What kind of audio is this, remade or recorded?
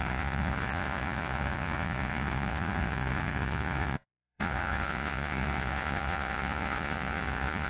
remade